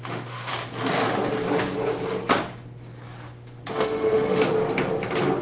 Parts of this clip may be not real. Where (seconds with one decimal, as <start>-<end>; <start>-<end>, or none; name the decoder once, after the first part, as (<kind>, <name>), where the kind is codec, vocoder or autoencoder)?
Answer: 0.0-0.5 (autoencoder, DAC-VAE); 3.7-4.4